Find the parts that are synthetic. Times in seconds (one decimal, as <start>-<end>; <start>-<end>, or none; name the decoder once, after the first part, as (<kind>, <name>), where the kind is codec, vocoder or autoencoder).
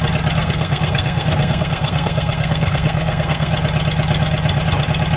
0.4-3.5 (codec, SNAC)